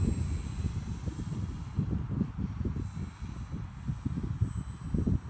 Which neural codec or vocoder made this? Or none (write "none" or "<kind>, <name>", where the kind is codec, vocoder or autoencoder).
none